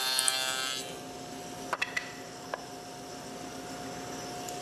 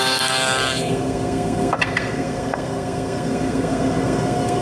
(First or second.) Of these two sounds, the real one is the first